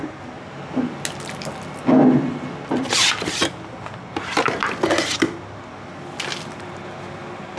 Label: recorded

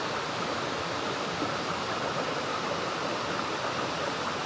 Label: recorded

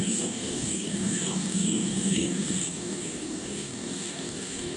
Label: remade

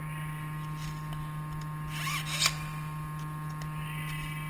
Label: recorded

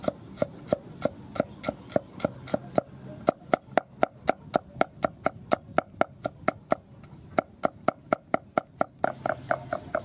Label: recorded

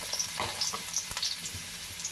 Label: remade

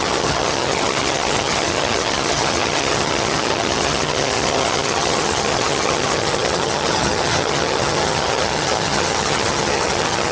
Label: remade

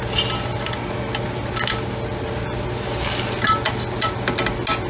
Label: recorded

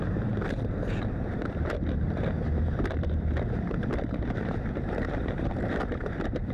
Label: remade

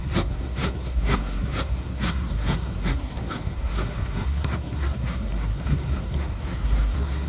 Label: remade